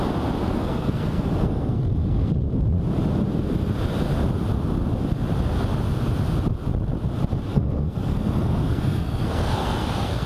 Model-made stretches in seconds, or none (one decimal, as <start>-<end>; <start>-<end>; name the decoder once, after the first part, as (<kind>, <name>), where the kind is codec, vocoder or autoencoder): 0.4-2.3 (codec, SNAC); 7.5-10.3

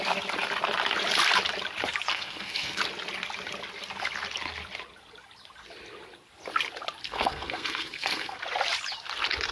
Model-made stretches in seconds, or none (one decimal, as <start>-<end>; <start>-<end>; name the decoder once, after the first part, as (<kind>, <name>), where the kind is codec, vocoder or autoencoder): 2.1-2.8 (codec, SNAC); 7.0-8.4

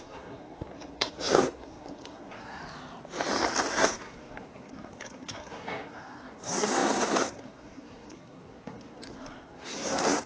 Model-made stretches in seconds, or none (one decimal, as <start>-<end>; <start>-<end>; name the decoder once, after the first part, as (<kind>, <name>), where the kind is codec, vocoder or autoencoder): 0.0-2.6 (codec, SNAC); 3.7-10.3

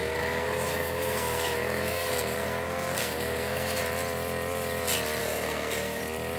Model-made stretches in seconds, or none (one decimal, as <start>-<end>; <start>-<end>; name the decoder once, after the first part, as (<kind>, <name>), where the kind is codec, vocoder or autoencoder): 0.0-3.8 (codec, SNAC); 5.2-6.0